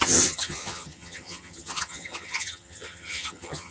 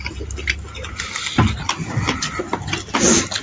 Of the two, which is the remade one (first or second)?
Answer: first